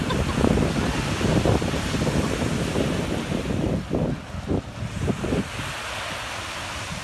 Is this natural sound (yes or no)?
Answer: yes